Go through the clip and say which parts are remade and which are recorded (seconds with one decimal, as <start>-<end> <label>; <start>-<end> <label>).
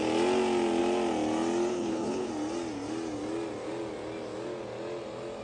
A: 0.0-1.7 recorded; 1.7-2.3 remade; 2.3-5.4 recorded